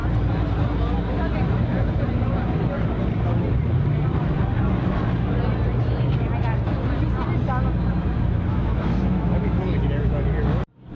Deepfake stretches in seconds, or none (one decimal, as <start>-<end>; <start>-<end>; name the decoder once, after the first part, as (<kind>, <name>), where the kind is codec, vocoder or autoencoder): 8.5-9.6 (autoencoder, DAC-VAE)